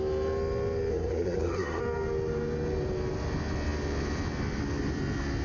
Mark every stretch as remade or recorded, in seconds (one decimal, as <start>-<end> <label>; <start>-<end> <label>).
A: 0.0-0.9 recorded; 0.9-1.8 remade; 1.8-5.4 recorded